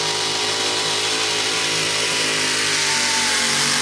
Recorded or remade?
recorded